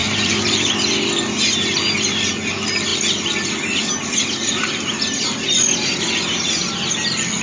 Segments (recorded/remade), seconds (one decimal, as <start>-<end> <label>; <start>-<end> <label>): 0.0-0.8 remade; 0.8-7.4 recorded